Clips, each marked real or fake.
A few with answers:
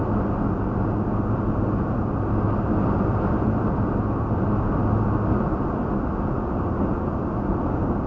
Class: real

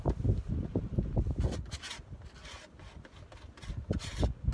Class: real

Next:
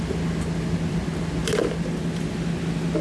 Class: real